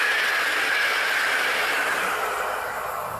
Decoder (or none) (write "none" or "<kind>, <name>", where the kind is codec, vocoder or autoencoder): none